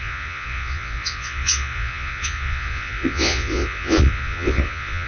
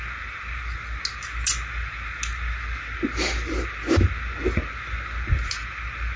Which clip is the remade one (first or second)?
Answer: first